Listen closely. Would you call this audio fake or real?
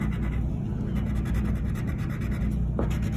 real